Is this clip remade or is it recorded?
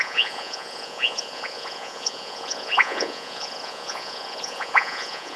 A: remade